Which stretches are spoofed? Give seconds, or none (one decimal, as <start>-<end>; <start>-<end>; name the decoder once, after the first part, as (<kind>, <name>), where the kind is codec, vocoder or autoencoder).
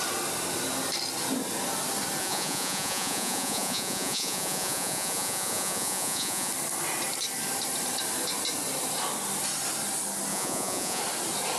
2.2-6.5 (vocoder, Vocos); 10.3-11.0